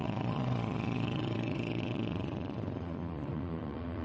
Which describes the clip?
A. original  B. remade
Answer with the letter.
B